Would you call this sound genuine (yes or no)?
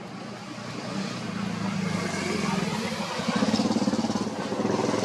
yes